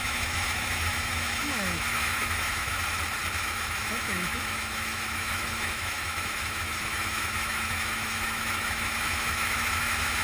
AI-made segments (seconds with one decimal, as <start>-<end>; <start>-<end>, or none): 0.0-2.8; 3.4-10.2